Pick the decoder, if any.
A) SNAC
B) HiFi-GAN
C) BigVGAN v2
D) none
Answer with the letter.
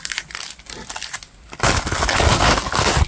D